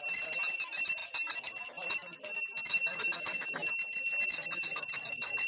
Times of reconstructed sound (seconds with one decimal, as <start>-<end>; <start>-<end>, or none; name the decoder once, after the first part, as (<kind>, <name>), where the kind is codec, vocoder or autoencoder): 0.0-1.0 (vocoder, BigVGAN v2); 4.3-5.5

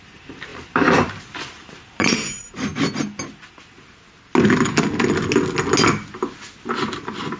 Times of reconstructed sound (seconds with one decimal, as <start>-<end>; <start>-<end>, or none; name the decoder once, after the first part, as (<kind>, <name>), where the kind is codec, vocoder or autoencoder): 0.0-2.7 (vocoder, BigVGAN v2)

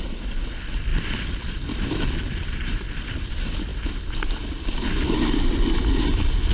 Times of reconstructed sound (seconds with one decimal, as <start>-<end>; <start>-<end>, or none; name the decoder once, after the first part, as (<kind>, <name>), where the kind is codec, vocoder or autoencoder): 0.9-3.3 (vocoder, BigVGAN v2)

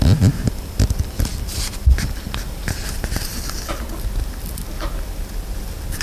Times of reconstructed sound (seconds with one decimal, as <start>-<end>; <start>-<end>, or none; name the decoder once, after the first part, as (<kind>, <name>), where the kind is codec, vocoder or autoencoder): none

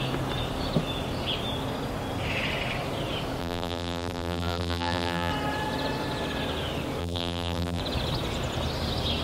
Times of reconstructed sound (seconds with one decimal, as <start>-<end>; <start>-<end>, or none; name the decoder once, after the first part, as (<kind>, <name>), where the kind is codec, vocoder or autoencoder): 3.4-5.3 (vocoder, BigVGAN v2); 7.0-7.8

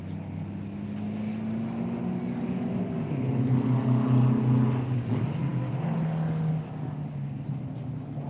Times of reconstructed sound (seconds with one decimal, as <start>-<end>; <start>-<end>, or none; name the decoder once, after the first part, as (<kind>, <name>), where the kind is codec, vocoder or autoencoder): none

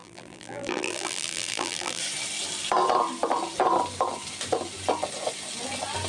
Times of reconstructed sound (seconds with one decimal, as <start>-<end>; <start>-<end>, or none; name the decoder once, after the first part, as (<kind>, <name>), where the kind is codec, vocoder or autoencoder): 0.0-2.0 (vocoder, BigVGAN v2)

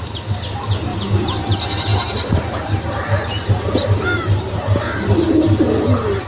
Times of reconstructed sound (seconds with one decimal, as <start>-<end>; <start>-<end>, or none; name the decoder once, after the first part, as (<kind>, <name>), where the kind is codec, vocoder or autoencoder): 0.9-1.5 (vocoder, BigVGAN v2)